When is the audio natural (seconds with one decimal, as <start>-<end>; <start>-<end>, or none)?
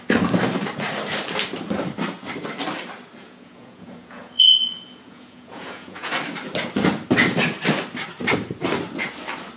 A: 0.0-3.2; 6.1-9.6